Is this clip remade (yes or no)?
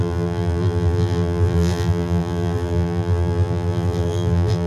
yes